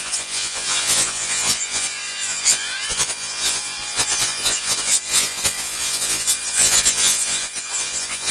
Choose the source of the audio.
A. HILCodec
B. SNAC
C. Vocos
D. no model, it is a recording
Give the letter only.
C